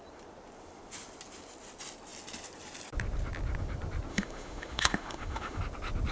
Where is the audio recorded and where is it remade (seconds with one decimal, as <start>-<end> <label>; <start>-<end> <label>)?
0.0-4.1 recorded; 4.1-5.6 remade; 5.6-6.1 recorded